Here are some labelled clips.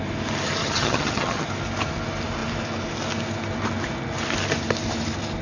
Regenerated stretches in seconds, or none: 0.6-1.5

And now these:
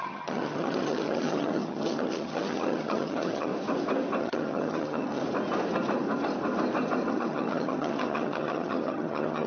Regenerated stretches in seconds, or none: 0.0-3.5; 4.2-5.2; 7.1-9.5

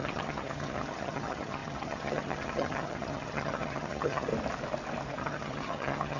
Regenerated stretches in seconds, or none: 0.0-4.3; 5.1-6.2

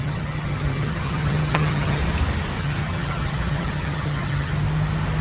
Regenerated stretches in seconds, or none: 0.0-2.0; 2.6-4.5

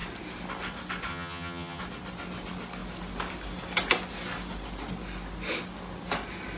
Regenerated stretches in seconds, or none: 1.1-1.8

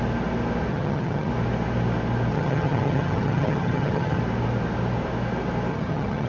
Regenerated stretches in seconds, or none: 0.7-1.3; 2.3-4.2; 5.7-6.3

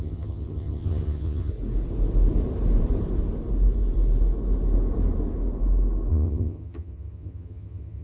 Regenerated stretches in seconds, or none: 0.0-1.5; 6.1-8.0